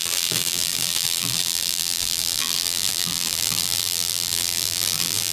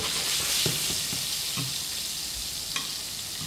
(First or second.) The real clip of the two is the second